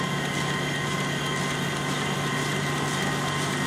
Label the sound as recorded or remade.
recorded